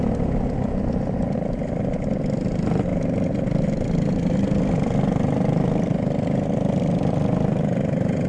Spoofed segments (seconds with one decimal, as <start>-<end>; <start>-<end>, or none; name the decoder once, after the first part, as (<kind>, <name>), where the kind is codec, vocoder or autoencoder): none